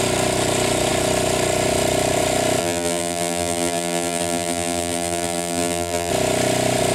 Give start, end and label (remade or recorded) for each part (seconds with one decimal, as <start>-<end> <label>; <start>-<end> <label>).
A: 0.0-2.6 recorded; 2.6-6.1 remade; 6.1-6.9 recorded